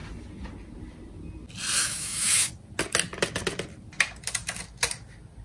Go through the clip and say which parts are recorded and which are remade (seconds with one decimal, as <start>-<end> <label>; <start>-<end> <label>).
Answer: 0.0-1.8 recorded; 1.8-2.5 remade; 2.5-5.4 recorded